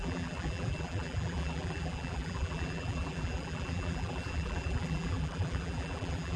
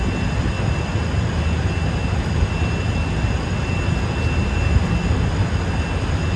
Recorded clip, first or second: second